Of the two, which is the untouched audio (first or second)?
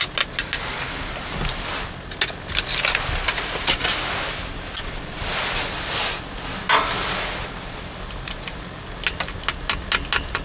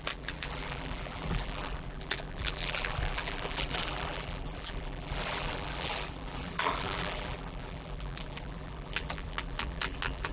first